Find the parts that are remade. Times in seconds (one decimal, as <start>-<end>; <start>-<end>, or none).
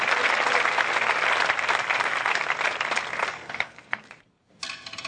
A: 3.3-4.0